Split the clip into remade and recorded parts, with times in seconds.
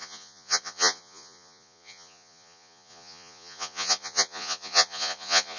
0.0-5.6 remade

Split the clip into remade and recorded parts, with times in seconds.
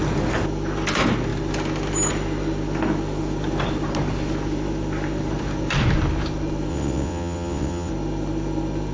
0.0-6.7 recorded; 6.7-7.9 remade; 7.9-8.9 recorded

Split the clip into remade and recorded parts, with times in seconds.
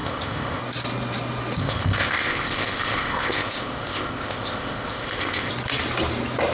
0.0-0.6 remade; 0.6-1.6 recorded; 1.6-5.5 remade; 5.5-6.5 recorded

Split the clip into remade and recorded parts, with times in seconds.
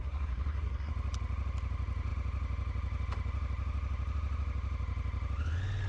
0.0-0.9 remade; 0.9-5.9 recorded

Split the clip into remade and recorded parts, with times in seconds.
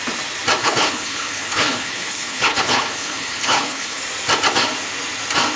0.0-0.6 recorded; 0.6-4.0 remade; 4.0-5.6 recorded